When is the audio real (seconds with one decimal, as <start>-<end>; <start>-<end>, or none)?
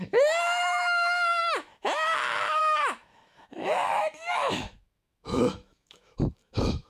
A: none